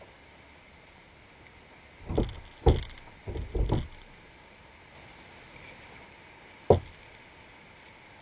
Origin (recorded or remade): recorded